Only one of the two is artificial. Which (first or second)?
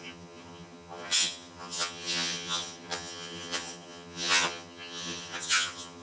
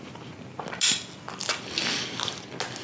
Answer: first